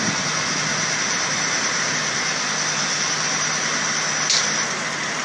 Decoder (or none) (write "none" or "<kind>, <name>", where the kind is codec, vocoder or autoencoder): none